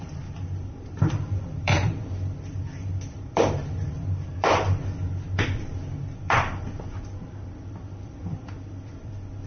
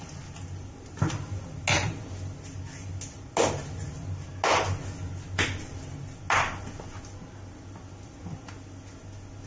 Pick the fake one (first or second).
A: first